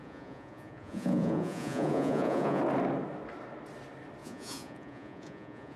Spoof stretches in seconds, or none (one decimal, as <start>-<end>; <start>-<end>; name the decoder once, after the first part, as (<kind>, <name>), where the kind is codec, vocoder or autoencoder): 0.0-2.6 (vocoder, Vocos); 4.2-5.8